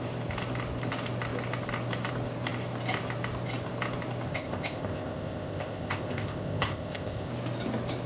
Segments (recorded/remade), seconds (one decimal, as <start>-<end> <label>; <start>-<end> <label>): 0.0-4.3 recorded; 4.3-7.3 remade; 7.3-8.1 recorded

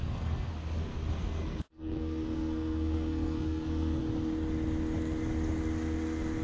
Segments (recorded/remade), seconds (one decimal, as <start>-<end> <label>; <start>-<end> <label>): 0.0-0.5 remade; 0.5-0.9 recorded; 0.9-4.0 remade; 4.0-6.4 recorded

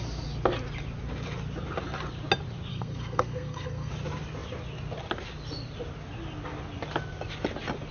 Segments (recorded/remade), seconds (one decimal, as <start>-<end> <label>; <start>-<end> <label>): 0.0-2.7 recorded; 2.7-3.9 remade; 3.9-7.9 recorded